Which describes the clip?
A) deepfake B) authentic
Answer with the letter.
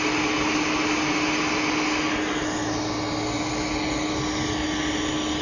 B